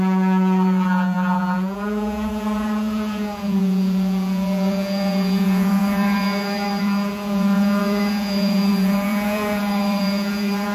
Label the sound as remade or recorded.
remade